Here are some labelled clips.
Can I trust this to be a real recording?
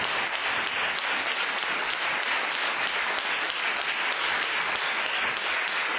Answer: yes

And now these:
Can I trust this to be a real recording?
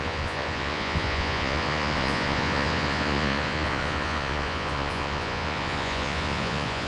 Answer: no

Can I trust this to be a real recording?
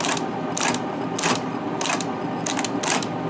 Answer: yes